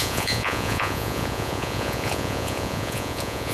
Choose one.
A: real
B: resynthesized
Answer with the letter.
B